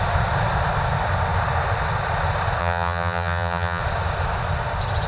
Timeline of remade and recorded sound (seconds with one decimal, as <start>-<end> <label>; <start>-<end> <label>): 0.0-2.6 recorded; 2.6-3.8 remade; 3.8-5.1 recorded